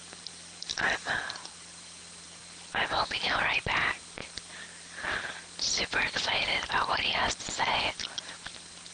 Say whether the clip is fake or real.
real